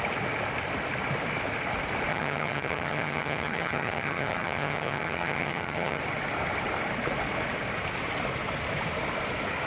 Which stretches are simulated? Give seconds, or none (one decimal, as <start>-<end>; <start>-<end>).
2.1-6.0